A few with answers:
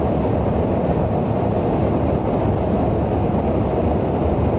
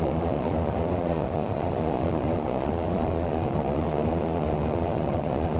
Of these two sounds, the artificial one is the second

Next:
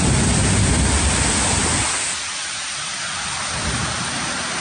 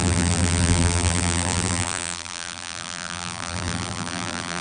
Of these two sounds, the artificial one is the second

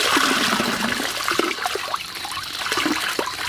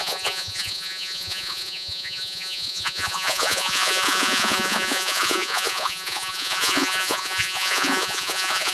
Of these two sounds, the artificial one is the second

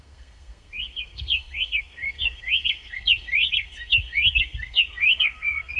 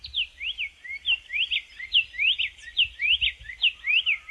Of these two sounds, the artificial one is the first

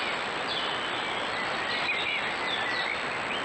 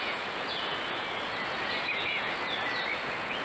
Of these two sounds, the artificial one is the second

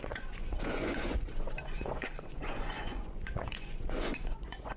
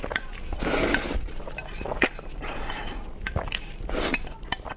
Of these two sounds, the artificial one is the first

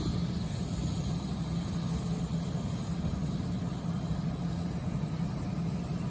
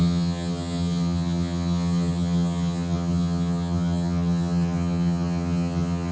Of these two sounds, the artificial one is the second